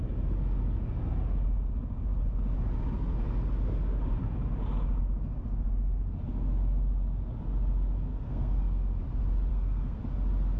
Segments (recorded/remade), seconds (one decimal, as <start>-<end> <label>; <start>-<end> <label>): 0.0-8.1 recorded; 8.1-9.0 remade; 9.0-9.5 recorded; 9.5-10.0 remade; 10.0-10.6 recorded